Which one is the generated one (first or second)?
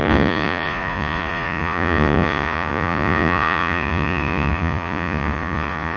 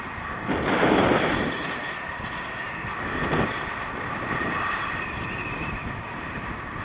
first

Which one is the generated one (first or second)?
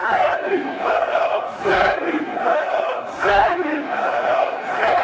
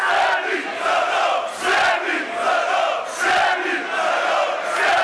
first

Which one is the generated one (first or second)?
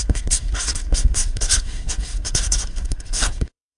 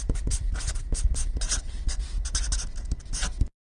first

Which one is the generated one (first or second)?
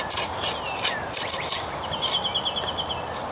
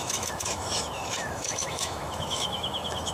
second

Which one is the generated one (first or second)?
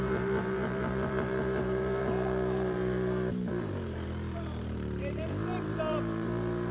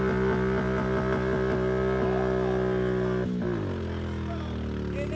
first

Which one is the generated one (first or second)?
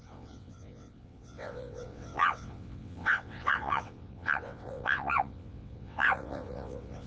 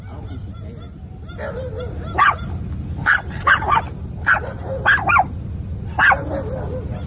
first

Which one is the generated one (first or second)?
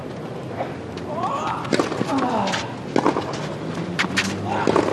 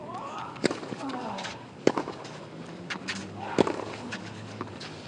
second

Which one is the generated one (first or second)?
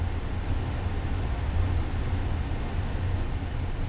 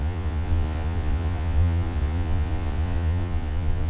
second